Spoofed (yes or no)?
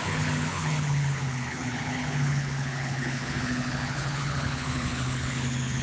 yes